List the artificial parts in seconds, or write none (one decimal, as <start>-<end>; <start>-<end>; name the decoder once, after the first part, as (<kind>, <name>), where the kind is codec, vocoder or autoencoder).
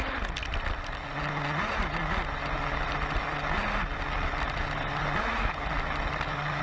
none